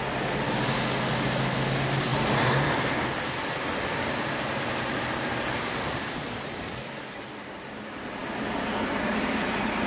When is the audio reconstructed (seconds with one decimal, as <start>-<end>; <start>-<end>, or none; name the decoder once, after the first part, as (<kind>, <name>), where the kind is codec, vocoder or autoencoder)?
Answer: none